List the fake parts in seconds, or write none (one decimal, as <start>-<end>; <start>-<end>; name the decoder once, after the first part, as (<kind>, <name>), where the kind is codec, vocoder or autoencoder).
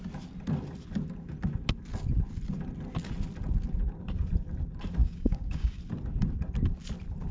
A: 5.0-5.8 (codec, DAC)